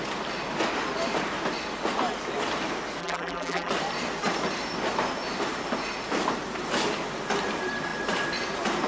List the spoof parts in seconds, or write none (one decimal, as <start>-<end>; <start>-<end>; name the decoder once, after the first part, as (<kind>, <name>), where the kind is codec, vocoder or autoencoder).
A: 3.0-3.7 (vocoder, BigVGAN v2)